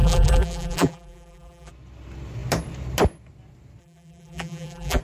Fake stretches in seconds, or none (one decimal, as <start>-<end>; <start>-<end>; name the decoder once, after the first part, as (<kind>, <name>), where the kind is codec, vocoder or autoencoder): 0.0-1.7 (vocoder, BigVGAN v2); 3.8-5.0